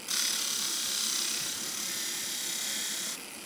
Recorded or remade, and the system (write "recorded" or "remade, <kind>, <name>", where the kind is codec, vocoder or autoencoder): recorded